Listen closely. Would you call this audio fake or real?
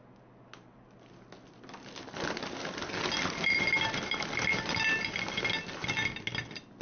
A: real